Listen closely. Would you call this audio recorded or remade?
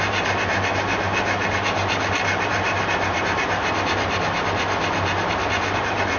recorded